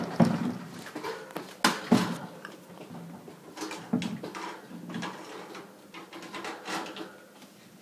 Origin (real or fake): real